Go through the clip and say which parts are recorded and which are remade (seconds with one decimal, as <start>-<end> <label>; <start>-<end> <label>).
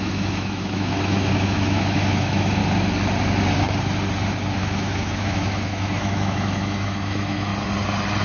0.0-2.6 remade; 2.6-4.6 recorded; 4.6-7.5 remade; 7.5-8.2 recorded